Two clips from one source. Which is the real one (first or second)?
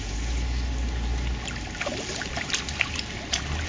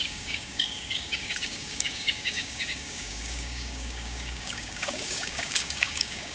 first